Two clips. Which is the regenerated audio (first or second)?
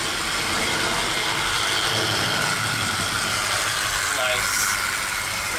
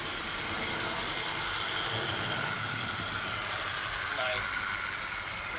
second